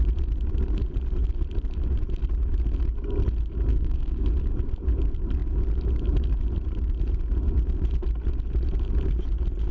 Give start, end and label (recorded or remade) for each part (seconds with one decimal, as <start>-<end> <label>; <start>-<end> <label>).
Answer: 0.0-3.7 recorded; 3.7-4.2 remade; 4.2-9.7 recorded